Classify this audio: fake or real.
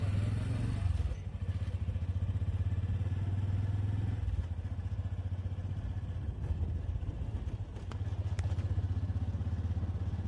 real